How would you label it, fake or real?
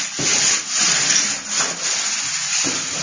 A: real